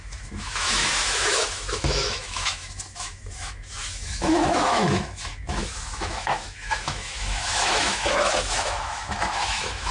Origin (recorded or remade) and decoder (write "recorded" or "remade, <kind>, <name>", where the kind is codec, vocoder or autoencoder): remade, autoencoder, DAC-VAE